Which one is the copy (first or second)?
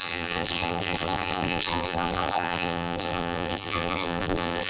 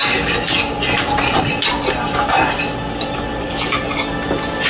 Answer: first